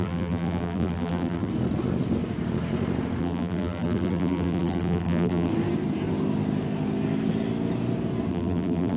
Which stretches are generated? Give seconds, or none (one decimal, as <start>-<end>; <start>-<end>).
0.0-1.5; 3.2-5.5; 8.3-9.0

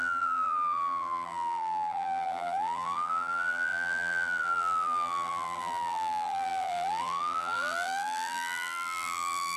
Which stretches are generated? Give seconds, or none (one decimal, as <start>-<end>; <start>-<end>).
0.0-9.6

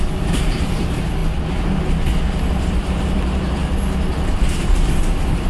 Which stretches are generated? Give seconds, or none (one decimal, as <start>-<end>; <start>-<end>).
0.0-1.2; 2.5-3.6; 4.1-5.5

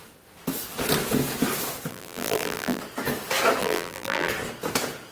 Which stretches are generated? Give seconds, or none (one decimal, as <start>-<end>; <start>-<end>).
1.9-2.8; 3.6-4.3

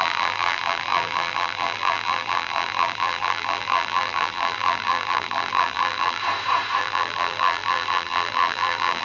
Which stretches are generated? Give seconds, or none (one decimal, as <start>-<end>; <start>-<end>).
0.0-6.2; 6.8-9.0

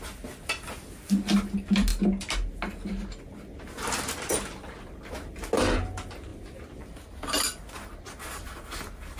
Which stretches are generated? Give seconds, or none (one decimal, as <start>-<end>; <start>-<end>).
none

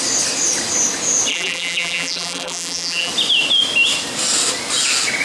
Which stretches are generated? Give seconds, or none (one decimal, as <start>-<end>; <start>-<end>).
1.3-3.1